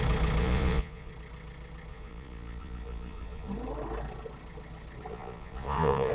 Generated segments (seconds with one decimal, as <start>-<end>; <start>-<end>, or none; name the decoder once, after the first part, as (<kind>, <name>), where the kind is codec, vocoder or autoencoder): 0.4-1.1 (vocoder, Vocos); 1.9-3.5; 5.1-6.1